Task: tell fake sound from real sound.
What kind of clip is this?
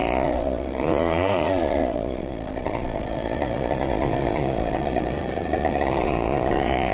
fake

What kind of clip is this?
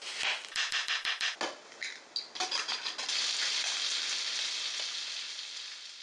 real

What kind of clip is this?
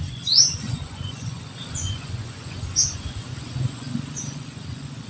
fake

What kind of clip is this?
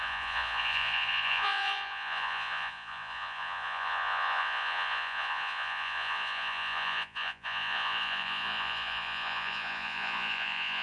fake